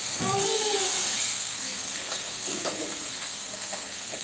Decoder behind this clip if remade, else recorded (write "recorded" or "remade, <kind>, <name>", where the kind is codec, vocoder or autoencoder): remade, codec, SNAC